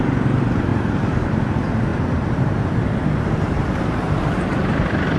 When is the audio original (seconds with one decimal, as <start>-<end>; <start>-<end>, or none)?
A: 0.0-0.7; 1.3-1.9